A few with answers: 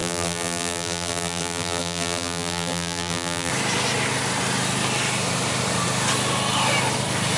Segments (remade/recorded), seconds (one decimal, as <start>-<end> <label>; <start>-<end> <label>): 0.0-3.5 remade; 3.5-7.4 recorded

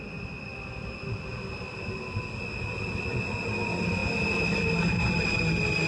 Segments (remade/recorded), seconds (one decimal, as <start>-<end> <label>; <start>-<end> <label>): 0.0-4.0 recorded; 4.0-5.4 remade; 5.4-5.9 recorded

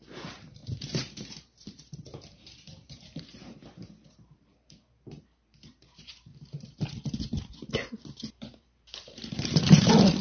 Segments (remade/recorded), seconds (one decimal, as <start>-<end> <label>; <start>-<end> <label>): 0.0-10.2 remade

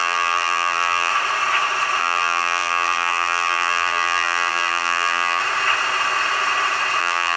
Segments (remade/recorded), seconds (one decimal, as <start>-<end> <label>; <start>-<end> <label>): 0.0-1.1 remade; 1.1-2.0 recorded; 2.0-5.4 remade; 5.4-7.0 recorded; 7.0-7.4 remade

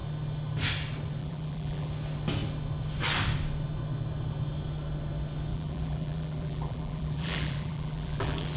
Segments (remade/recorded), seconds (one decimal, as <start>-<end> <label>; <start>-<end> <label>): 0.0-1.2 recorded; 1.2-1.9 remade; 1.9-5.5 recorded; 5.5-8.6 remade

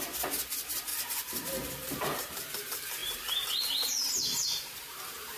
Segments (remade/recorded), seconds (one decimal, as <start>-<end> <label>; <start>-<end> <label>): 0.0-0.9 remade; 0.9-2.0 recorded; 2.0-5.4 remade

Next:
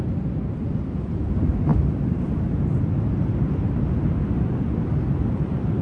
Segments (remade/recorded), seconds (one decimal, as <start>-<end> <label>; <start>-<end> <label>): 0.0-1.7 remade; 1.7-5.2 recorded; 5.2-5.8 remade